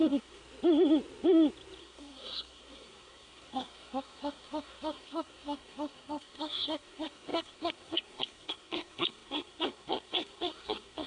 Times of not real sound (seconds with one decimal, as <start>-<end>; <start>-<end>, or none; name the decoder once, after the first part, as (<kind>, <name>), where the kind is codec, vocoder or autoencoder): 0.0-0.4 (codec, SNAC); 1.8-11.1